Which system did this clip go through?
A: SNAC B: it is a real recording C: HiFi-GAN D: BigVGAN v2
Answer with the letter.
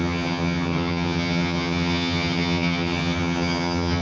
C